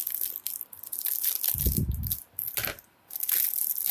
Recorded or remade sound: recorded